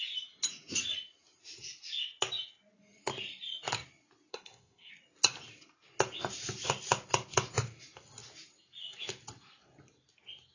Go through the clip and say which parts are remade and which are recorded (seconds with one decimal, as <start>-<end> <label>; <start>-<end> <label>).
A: 0.0-4.3 recorded; 4.3-4.9 remade; 4.9-10.5 recorded